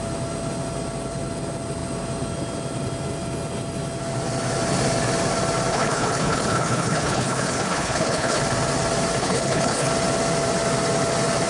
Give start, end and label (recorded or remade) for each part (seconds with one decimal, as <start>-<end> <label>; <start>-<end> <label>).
0.0-5.7 recorded; 5.7-8.4 remade; 8.4-9.2 recorded; 9.2-9.9 remade; 9.9-11.5 recorded